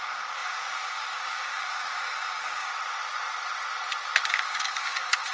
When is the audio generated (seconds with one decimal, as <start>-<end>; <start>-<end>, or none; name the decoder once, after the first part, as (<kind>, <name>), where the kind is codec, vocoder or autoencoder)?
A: 0.0-2.7 (codec, DAC); 4.3-5.3